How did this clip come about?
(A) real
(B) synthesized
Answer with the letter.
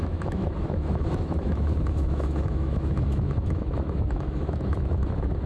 B